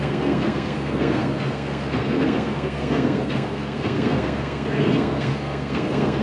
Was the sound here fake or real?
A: fake